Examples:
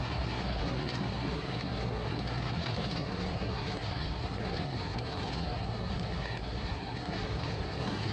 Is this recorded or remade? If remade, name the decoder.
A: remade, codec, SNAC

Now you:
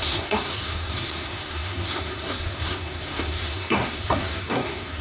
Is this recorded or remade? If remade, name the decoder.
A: remade, codec, SNAC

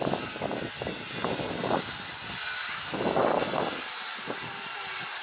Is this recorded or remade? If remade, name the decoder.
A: recorded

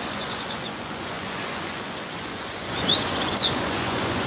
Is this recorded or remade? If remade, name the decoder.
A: remade, vocoder, Vocos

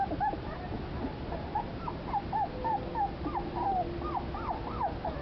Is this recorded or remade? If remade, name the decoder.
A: recorded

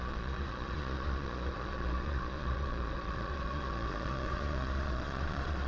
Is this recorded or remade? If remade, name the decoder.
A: remade, vocoder, Vocos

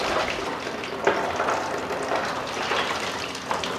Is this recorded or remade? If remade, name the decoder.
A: recorded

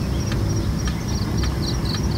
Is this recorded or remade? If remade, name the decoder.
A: recorded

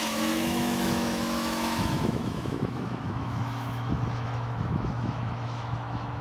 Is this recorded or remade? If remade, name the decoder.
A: remade, autoencoder, DAC-VAE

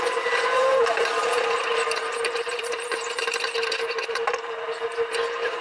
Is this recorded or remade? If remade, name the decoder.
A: remade, vocoder, BigVGAN v2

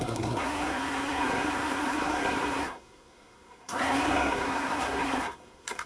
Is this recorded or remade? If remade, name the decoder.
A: remade, codec, SNAC